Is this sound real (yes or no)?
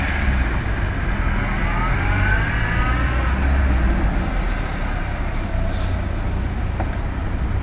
yes